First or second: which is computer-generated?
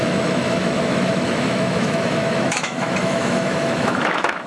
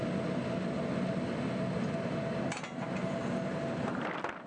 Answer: first